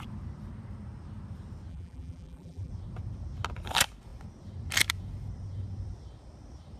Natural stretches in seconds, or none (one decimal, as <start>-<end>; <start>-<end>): 0.0-1.7; 2.7-6.8